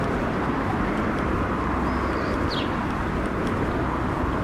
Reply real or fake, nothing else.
real